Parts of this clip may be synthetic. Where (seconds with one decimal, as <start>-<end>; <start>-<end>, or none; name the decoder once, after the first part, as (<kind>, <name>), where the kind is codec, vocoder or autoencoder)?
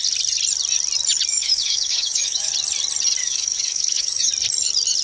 1.3-2.5 (autoencoder, DAC-VAE); 3.2-4.3